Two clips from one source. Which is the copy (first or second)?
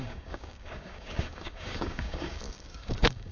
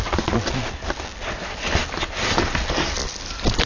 first